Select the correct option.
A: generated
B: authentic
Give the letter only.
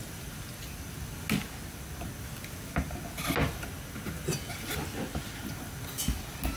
B